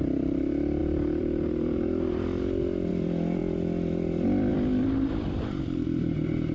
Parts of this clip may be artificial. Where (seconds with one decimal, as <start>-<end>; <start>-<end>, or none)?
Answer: 0.0-6.5